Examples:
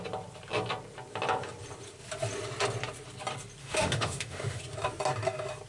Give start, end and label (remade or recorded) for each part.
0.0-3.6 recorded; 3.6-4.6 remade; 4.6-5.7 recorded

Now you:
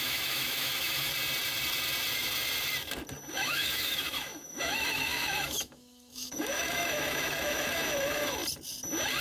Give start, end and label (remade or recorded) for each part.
0.0-1.1 remade; 1.1-3.3 recorded; 3.3-8.4 remade; 8.4-9.2 recorded

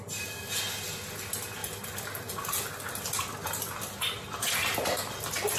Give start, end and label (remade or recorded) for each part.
0.0-5.6 recorded

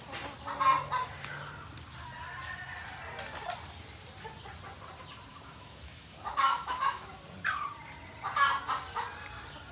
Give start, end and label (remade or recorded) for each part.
0.0-5.3 recorded; 5.3-7.1 remade; 7.1-9.7 recorded

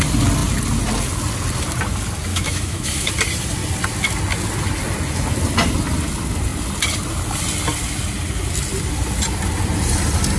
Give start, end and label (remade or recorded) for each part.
0.0-2.3 recorded; 2.3-3.1 remade; 3.1-10.4 recorded

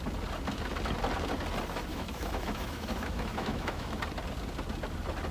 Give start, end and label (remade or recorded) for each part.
0.0-1.9 recorded; 1.9-4.0 remade; 4.0-5.3 recorded